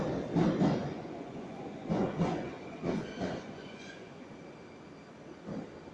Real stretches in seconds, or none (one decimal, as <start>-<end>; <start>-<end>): 0.0-0.8; 4.3-5.9